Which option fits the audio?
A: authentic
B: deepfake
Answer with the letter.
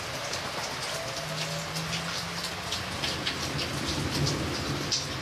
A